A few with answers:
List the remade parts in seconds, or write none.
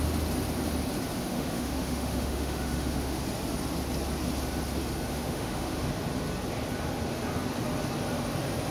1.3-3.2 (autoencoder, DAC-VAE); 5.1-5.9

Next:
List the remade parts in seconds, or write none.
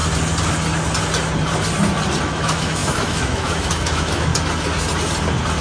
2.2-4.3 (autoencoder, DAC-VAE)